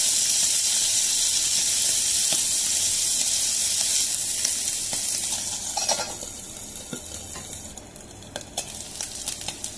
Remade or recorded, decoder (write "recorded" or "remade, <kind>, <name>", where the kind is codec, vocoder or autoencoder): recorded